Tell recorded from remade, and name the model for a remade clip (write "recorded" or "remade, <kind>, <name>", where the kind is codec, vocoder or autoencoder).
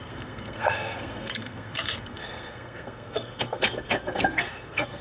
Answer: remade, codec, SNAC